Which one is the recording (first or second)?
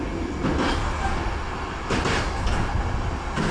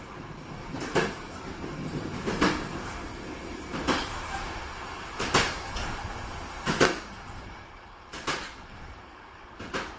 first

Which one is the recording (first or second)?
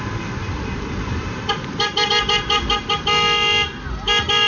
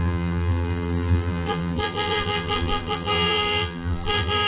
first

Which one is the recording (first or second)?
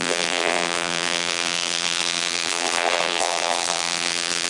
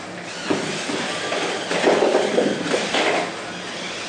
second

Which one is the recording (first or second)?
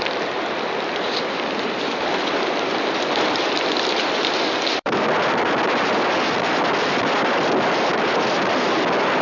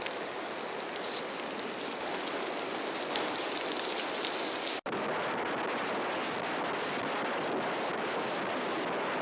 second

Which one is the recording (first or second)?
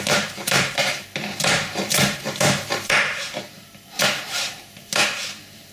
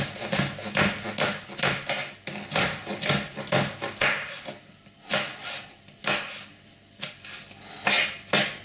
second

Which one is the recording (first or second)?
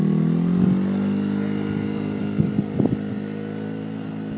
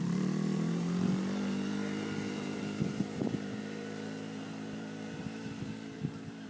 first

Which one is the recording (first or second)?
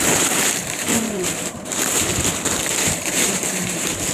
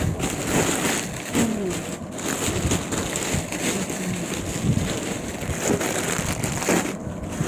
second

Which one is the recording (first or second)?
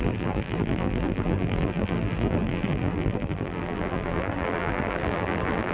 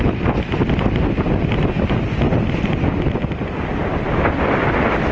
second